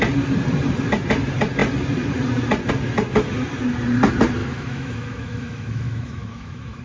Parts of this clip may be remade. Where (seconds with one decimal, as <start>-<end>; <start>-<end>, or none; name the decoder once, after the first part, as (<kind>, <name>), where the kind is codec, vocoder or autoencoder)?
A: 4.4-6.8 (autoencoder, DAC-VAE)